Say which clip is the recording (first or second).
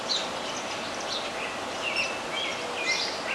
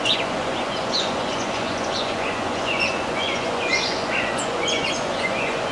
first